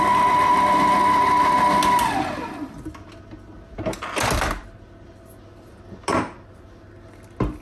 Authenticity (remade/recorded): recorded